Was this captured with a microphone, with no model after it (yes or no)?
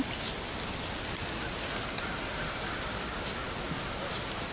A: yes